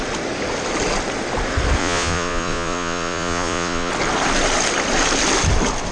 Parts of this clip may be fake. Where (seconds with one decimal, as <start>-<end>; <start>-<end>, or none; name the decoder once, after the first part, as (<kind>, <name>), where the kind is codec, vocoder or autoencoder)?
1.8-3.9 (vocoder, Vocos)